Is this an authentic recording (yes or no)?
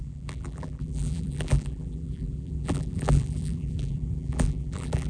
no